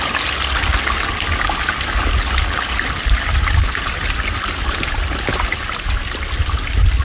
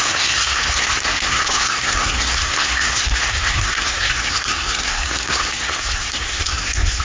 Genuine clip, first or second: first